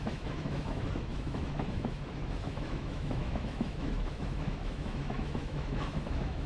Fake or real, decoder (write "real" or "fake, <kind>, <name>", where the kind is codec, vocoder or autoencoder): fake, autoencoder, DAC-VAE